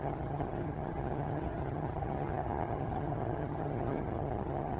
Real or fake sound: fake